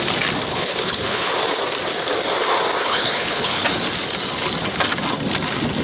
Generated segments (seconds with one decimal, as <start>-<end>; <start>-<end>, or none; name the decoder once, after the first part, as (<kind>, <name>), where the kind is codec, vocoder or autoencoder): 0.5-1.3 (codec, HILCodec); 2.8-3.6